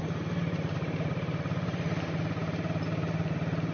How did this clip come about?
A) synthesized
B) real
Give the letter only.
B